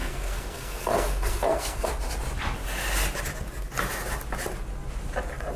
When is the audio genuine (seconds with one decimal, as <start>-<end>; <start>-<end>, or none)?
1.9-5.6